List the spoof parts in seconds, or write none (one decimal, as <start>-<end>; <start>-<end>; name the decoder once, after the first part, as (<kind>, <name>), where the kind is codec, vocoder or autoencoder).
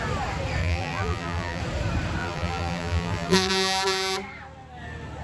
0.6-1.6 (vocoder, BigVGAN v2); 2.2-3.5